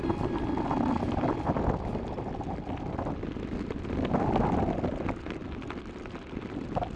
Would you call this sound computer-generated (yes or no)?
no